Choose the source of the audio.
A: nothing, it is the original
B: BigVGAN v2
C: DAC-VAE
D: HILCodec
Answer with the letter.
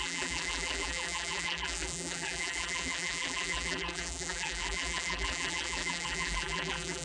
B